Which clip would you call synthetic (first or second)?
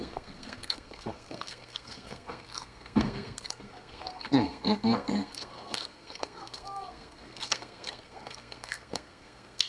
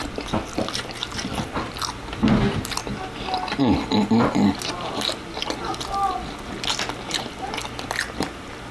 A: first